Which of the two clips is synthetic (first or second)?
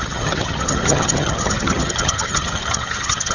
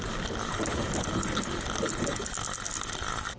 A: first